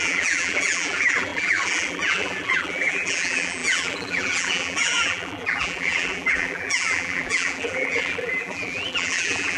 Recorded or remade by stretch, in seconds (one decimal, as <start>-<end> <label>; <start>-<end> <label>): 0.0-9.6 remade